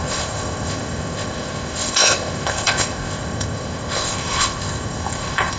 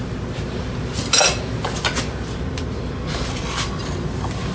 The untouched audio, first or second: second